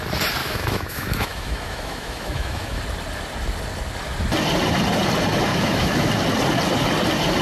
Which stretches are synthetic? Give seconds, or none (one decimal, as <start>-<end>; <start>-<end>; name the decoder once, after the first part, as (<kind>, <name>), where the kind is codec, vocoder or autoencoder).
0.4-2.8 (autoencoder, DAC-VAE); 5.5-6.1